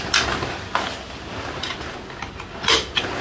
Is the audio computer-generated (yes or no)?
no